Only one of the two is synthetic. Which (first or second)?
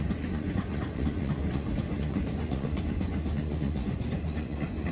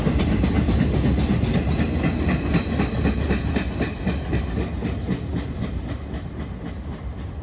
first